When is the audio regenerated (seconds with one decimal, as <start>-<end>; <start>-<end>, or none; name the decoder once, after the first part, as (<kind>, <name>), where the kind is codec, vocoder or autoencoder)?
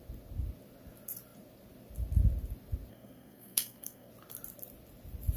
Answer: 2.9-4.1 (codec, SNAC)